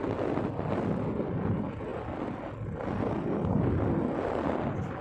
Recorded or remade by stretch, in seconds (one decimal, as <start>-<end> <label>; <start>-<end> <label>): 0.0-5.0 recorded